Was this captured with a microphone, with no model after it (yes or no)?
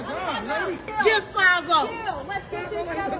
yes